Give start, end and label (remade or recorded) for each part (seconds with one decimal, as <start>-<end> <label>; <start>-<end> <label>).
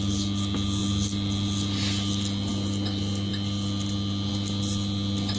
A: 0.0-5.4 recorded